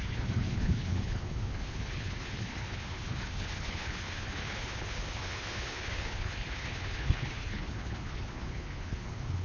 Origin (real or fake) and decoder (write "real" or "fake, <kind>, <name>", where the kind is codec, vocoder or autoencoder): fake, codec, HILCodec